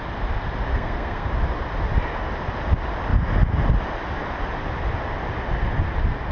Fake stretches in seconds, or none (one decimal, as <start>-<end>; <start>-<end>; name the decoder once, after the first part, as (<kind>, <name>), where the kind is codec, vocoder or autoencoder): 0.7-1.3 (codec, SNAC)